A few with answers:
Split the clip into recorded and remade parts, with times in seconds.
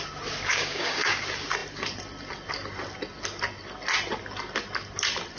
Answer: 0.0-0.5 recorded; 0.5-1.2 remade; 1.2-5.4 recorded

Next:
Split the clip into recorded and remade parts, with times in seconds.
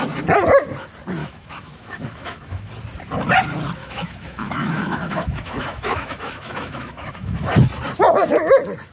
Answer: 0.0-1.2 recorded; 1.2-2.7 remade; 2.7-3.8 recorded; 3.8-7.4 remade; 7.4-8.9 recorded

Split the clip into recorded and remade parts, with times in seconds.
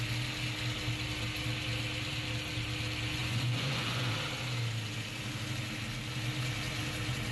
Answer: 0.0-3.2 recorded; 3.2-4.1 remade; 4.1-7.3 recorded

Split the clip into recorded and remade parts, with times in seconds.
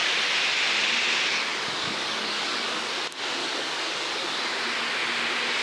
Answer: 0.0-1.5 recorded; 1.5-2.9 remade; 2.9-3.4 recorded; 3.4-4.3 remade; 4.3-5.6 recorded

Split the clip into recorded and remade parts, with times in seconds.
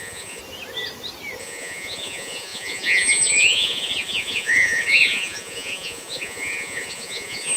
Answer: 0.0-0.4 remade; 0.4-1.4 recorded; 1.4-7.6 remade